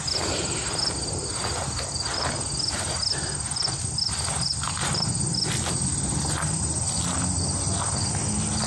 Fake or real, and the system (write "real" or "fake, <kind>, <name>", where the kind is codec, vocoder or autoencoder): real